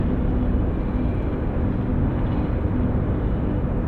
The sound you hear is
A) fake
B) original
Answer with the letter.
B